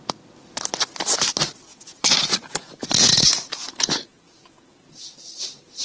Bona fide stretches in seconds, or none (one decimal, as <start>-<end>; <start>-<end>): 0.0-1.7; 5.2-5.8